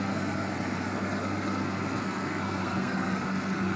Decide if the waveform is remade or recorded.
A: remade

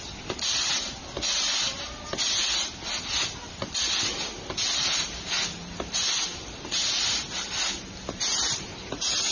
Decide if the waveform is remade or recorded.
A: recorded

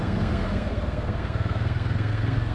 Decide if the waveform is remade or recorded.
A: remade